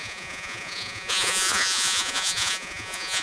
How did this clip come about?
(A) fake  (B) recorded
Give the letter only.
A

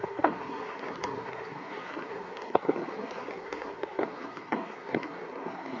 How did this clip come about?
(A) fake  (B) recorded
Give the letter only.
A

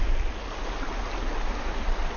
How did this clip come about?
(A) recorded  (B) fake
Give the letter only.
A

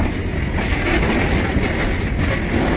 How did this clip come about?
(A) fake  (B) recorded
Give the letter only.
B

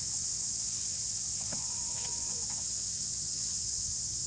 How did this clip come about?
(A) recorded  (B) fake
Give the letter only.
B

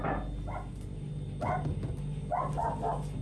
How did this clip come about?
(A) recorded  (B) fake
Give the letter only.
A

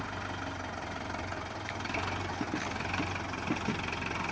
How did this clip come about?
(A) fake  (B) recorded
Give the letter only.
B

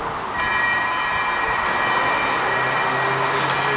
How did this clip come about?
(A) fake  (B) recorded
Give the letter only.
B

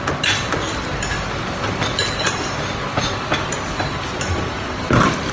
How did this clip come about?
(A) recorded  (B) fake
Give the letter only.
B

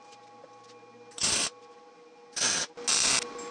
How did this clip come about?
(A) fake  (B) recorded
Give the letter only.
B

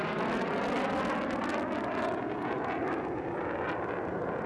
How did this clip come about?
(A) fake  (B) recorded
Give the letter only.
B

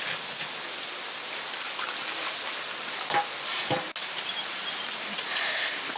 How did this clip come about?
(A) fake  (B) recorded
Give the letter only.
B